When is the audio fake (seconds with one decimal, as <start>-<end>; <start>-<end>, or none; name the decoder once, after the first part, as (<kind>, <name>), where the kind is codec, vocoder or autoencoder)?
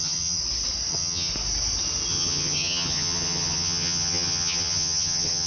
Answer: 0.0-0.4 (vocoder, HiFi-GAN); 0.9-1.3; 2.1-5.5